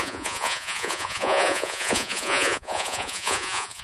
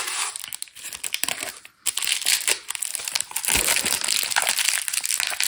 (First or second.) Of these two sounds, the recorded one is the second